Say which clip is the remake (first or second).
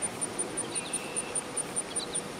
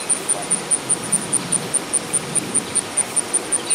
first